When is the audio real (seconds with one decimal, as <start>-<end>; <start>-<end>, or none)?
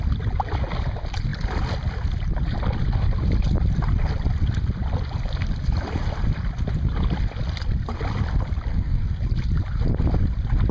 0.0-8.7; 9.2-10.7